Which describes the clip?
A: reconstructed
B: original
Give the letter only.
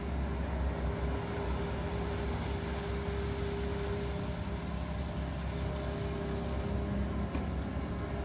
B